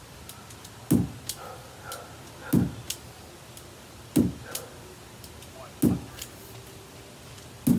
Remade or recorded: recorded